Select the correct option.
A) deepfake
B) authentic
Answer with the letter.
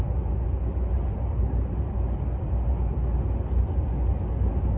B